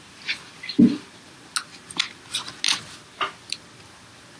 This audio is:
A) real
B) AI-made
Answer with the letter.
A